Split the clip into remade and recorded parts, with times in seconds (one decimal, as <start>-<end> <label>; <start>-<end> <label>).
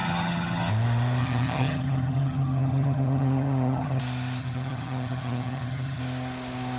0.0-0.7 remade; 0.7-1.2 recorded; 1.2-4.0 remade; 4.0-4.4 recorded; 4.4-6.0 remade; 6.0-6.8 recorded